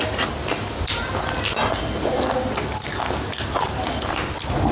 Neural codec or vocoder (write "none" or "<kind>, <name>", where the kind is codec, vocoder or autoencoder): none